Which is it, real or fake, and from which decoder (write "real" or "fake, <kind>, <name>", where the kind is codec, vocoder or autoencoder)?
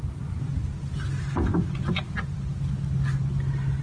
real